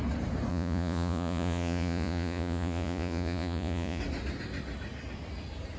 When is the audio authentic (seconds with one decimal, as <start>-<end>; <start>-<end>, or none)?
0.0-0.5; 4.0-5.8